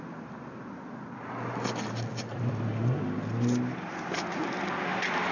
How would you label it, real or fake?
real